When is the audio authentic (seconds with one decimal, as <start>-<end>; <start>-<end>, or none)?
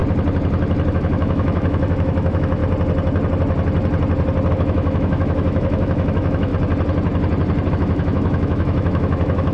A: 0.0-0.9; 2.6-4.5; 6.5-7.7